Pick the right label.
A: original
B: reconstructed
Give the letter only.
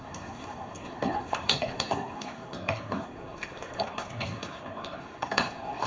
B